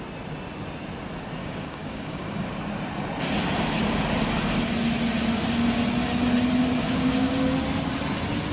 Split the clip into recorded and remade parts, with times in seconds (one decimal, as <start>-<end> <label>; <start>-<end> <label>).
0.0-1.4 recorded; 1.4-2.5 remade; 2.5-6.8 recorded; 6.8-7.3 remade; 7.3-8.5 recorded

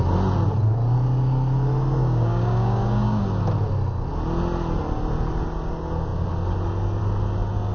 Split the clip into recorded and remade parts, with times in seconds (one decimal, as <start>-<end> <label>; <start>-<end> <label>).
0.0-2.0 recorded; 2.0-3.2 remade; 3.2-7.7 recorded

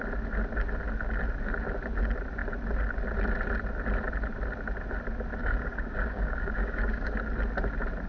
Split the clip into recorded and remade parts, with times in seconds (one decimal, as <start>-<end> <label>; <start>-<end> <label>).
0.0-5.4 recorded; 5.4-7.2 remade; 7.2-8.1 recorded

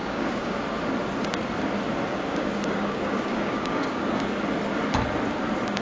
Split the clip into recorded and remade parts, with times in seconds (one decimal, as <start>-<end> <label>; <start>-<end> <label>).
0.0-0.6 remade; 0.6-2.1 recorded; 2.1-4.0 remade; 4.0-5.8 recorded